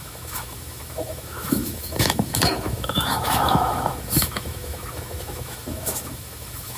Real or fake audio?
fake